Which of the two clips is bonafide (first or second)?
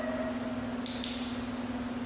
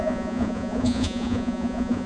first